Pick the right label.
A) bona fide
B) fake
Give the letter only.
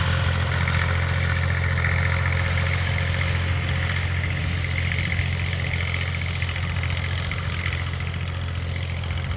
A